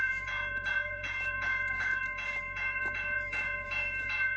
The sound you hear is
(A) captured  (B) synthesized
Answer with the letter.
B